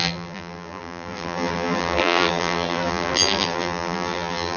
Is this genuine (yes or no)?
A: no